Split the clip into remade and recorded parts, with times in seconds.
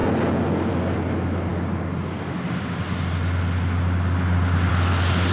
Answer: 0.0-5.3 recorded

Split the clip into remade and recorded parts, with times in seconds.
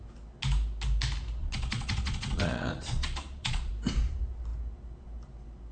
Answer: 0.0-1.4 recorded; 1.4-3.7 remade; 3.7-5.7 recorded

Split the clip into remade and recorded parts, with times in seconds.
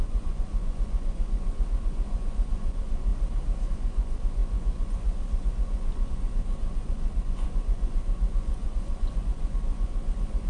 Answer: 0.0-3.1 remade; 3.1-3.7 recorded; 3.7-10.5 remade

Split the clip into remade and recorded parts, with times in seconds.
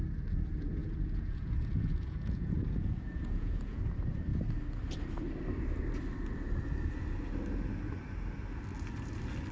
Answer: 0.0-0.8 recorded; 0.8-3.8 remade; 3.8-9.5 recorded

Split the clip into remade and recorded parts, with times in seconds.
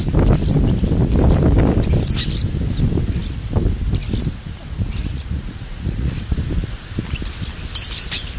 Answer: 0.0-5.0 recorded; 5.0-6.1 remade; 6.1-8.4 recorded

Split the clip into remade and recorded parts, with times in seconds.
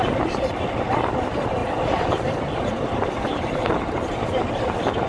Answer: 0.0-5.1 recorded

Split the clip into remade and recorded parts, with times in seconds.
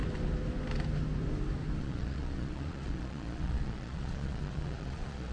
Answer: 0.0-1.8 recorded; 1.8-5.3 remade